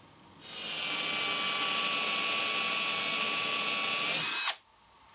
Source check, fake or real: real